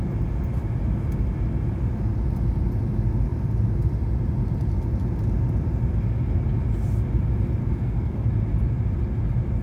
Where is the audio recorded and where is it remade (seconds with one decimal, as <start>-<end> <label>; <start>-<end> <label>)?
0.0-7.6 recorded; 7.6-8.3 remade; 8.3-9.6 recorded